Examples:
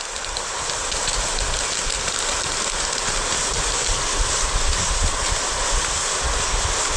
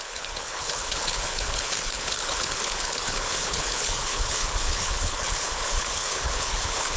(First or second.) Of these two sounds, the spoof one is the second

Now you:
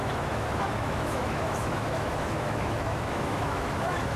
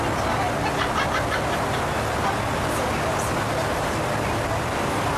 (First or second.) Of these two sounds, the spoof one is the first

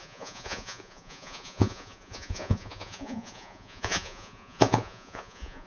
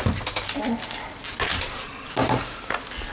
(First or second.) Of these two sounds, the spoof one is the first